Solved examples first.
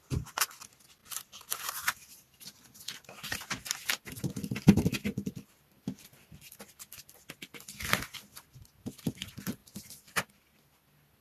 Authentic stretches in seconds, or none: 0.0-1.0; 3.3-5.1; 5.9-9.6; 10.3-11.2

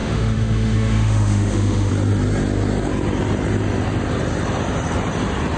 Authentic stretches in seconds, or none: 1.9-5.6

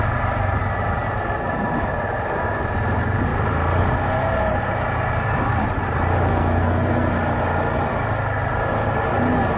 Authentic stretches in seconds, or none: 0.0-6.3; 7.1-9.6